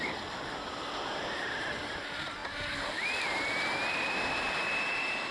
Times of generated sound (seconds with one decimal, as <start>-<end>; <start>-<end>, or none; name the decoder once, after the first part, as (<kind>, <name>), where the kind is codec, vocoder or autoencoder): none